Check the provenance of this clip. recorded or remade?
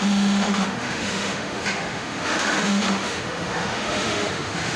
remade